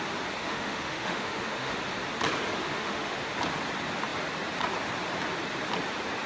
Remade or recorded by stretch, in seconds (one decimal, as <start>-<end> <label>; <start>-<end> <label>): 0.0-0.4 recorded; 0.4-1.8 remade; 1.8-2.6 recorded; 2.6-3.3 remade; 3.3-6.3 recorded